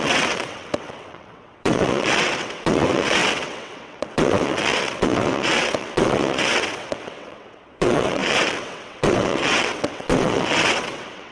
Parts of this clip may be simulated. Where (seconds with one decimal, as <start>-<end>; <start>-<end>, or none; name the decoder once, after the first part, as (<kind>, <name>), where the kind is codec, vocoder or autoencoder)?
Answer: 0.0-11.3 (vocoder, WaveNeXt)